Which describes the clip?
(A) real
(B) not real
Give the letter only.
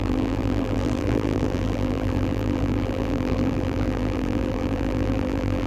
B